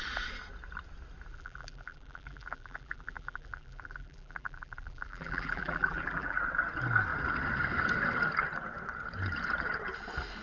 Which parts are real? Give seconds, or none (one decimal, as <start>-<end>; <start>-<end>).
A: 0.0-1.3; 6.4-10.4